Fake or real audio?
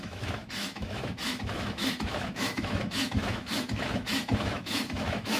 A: fake